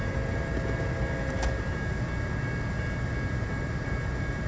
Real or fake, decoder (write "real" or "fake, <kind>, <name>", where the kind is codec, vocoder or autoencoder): real